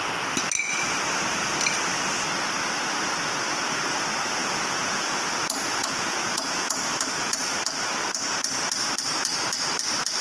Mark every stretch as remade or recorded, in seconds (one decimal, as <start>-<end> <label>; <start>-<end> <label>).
0.0-4.4 recorded; 4.4-5.2 remade; 5.2-5.8 recorded; 5.8-6.8 remade; 6.8-10.2 recorded

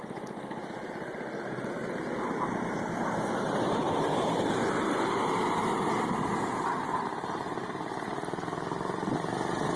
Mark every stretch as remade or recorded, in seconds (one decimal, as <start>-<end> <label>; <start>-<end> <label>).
0.0-1.8 remade; 1.8-2.4 recorded; 2.4-9.8 remade